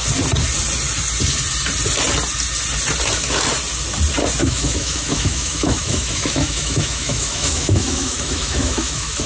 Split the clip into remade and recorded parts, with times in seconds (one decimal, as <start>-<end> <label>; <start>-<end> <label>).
0.0-4.4 recorded; 4.4-9.3 remade